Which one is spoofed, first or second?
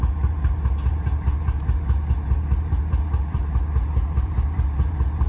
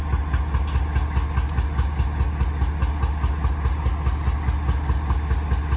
first